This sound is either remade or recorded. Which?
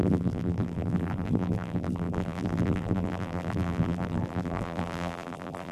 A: remade